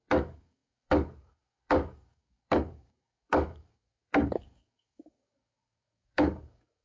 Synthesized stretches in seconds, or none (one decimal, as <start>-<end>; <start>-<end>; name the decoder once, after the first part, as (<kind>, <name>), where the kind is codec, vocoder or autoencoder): 0.0-6.8 (codec, DAC)